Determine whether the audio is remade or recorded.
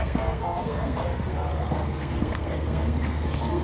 remade